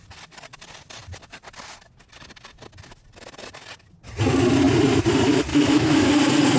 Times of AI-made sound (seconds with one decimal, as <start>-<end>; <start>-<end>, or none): 5.5-6.1